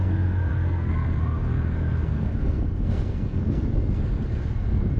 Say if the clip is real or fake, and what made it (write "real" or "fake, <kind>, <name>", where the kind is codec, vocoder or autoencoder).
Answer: fake, codec, SNAC